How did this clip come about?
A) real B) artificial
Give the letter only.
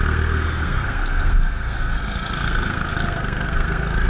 B